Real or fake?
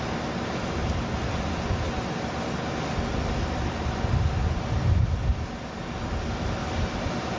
real